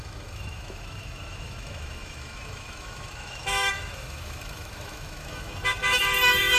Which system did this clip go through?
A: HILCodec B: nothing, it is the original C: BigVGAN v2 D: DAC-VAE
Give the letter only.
D